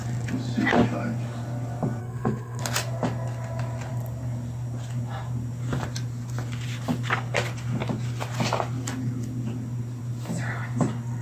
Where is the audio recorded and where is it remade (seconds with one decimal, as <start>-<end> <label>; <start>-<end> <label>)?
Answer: 0.0-2.0 recorded; 2.0-2.6 remade; 2.6-11.2 recorded